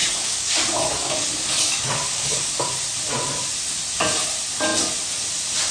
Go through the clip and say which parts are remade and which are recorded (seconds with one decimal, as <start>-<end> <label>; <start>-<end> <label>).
0.0-2.7 remade; 2.7-5.7 recorded